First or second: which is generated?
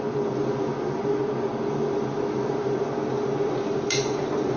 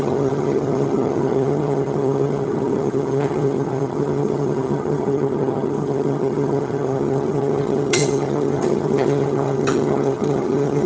second